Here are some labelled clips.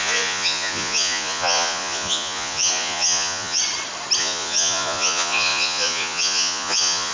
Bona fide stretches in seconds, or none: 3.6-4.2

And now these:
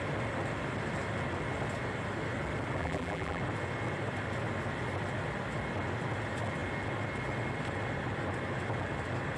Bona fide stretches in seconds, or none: 0.0-2.8; 3.4-9.4

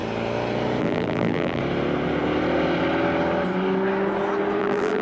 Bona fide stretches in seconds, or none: 0.0-0.8; 1.6-4.6